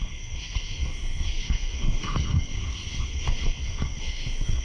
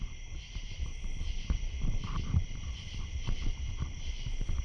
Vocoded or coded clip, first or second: first